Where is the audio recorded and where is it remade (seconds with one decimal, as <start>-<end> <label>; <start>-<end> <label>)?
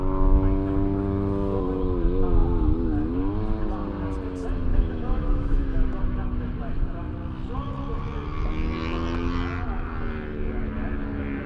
0.0-4.7 recorded; 4.7-6.0 remade; 6.0-11.5 recorded